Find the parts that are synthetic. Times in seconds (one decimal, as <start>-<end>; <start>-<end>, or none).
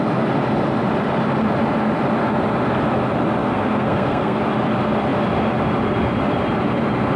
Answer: 3.4-4.4